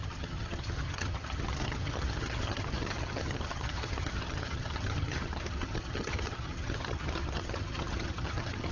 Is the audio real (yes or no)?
no